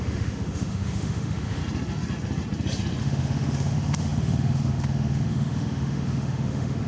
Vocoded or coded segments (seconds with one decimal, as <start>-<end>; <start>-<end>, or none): 0.0-1.6; 3.0-6.9